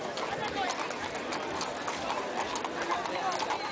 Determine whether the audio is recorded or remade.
recorded